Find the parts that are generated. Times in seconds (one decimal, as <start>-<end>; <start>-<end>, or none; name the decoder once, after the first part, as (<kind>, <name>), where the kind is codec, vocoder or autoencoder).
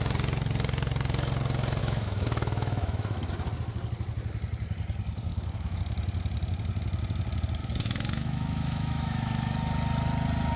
1.8-3.3 (autoencoder, DAC-VAE); 5.3-5.8; 7.6-9.5